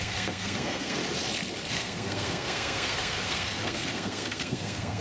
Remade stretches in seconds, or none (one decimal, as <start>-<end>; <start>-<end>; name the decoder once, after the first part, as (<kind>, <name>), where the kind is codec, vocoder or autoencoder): 0.0-1.0 (codec, SNAC); 1.7-5.0